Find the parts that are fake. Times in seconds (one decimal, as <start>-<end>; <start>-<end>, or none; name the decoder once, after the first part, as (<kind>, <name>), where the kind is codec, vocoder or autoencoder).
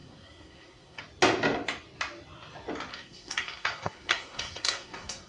0.0-1.0 (codec, SNAC); 2.9-5.3